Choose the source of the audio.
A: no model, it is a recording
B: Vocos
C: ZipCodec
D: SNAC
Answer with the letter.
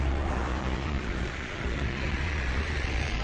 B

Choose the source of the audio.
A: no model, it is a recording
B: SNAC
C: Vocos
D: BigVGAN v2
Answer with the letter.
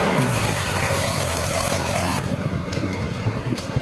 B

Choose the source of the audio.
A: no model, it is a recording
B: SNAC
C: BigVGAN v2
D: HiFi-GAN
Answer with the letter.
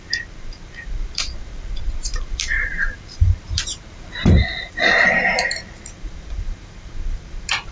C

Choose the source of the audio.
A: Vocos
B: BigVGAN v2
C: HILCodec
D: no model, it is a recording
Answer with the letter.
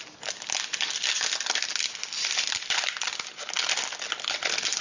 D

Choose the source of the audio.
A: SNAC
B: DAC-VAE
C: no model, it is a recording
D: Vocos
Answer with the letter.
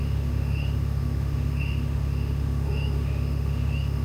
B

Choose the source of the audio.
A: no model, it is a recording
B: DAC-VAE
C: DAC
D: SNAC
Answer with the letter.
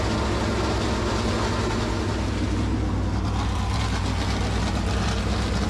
A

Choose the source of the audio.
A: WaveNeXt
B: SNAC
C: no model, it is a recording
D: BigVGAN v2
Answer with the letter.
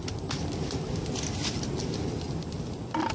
C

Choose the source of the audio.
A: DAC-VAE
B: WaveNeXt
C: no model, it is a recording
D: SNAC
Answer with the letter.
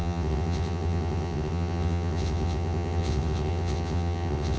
B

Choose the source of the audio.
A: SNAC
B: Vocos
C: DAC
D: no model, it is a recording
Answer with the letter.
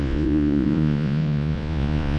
B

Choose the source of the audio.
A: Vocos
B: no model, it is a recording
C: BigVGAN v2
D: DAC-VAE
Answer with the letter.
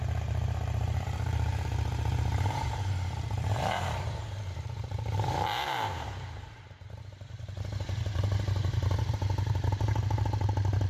C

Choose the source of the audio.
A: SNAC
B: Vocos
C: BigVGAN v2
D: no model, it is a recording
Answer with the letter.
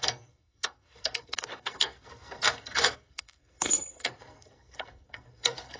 A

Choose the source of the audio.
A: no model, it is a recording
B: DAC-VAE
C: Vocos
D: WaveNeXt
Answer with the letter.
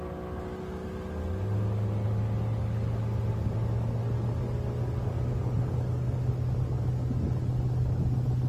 A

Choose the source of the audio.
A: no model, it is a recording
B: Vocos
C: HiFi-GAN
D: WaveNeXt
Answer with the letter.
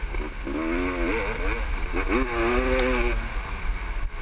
A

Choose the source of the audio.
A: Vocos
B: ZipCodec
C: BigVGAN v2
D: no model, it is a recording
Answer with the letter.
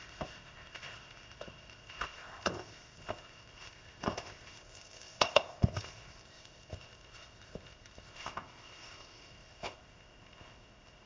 B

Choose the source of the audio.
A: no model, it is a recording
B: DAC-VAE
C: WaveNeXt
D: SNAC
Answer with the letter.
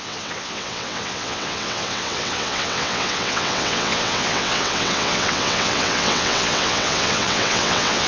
C